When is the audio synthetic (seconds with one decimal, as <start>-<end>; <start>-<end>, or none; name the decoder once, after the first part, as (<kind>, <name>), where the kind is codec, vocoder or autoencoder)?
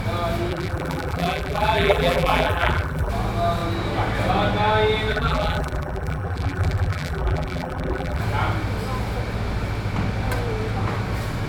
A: 0.5-3.1 (vocoder, BigVGAN v2); 5.1-8.2